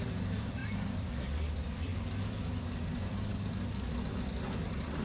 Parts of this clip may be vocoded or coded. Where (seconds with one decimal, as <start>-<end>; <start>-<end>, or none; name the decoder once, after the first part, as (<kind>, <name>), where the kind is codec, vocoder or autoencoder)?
0.0-1.9 (vocoder, BigVGAN v2)